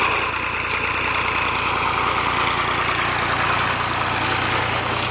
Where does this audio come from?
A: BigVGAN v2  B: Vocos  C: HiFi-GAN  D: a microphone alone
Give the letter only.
D